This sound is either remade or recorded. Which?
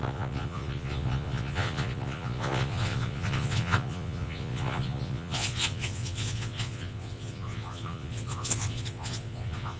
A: remade